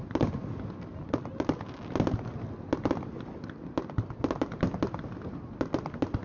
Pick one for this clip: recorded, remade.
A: recorded